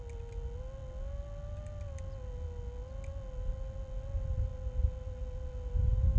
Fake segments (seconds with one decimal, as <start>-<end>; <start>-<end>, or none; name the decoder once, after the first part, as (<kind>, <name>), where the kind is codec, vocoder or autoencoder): none